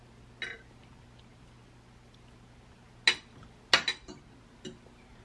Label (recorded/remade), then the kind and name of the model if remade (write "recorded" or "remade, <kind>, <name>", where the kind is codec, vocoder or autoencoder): recorded